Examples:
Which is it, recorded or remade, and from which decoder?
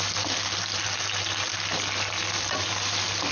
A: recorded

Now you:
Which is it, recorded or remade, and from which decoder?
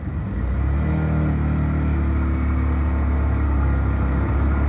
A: recorded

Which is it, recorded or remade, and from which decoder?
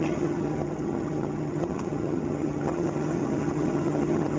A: remade, vocoder, HiFi-GAN